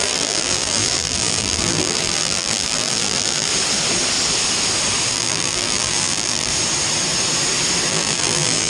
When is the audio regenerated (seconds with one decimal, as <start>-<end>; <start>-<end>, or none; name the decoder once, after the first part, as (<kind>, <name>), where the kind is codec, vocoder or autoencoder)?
0.0-3.5 (vocoder, BigVGAN v2); 5.1-6.5; 7.9-8.7